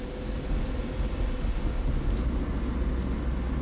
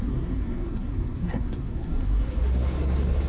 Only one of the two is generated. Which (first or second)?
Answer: second